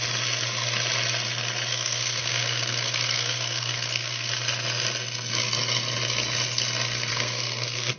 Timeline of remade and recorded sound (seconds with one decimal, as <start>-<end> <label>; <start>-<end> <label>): 0.0-1.7 recorded; 1.7-4.3 remade; 4.3-7.1 recorded; 7.1-8.0 remade